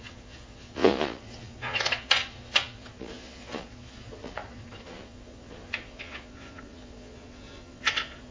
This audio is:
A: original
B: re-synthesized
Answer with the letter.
B